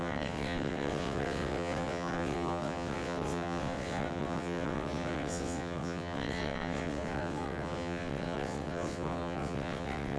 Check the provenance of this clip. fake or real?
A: fake